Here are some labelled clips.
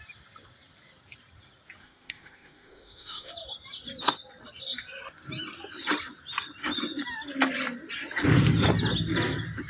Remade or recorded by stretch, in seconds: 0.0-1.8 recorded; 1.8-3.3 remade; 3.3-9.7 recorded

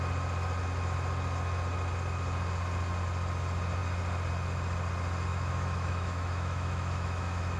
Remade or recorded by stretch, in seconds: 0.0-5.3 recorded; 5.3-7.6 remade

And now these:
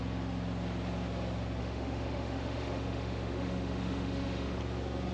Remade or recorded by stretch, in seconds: 0.0-1.6 recorded; 1.6-4.6 remade; 4.6-5.1 recorded

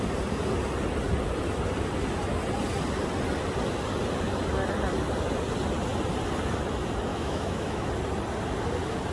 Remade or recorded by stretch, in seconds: 0.0-7.1 recorded; 7.1-7.9 remade; 7.9-9.1 recorded